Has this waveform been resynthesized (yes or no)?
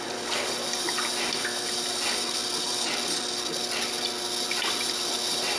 no